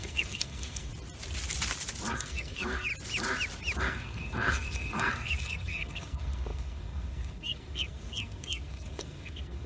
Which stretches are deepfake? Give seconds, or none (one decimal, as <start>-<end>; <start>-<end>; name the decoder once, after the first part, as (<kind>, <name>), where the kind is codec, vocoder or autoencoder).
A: 0.0-0.9 (codec, SNAC); 2.1-2.9; 3.8-9.7